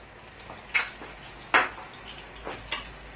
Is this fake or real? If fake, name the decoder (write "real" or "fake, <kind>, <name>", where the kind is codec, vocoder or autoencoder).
real